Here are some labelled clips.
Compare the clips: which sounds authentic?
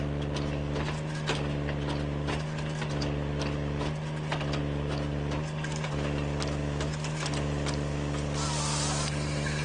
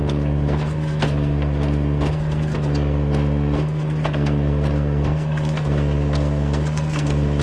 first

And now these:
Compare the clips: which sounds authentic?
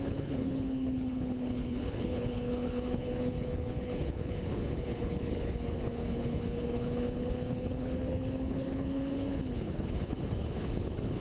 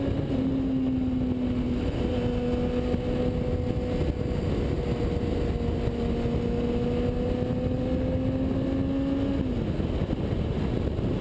second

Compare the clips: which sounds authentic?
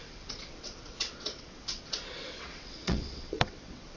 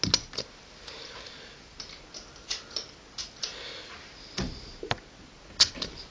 second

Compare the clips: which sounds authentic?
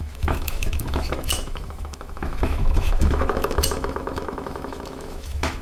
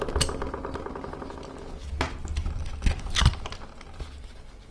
second